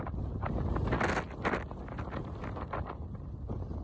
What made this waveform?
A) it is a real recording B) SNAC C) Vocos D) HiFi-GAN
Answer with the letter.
A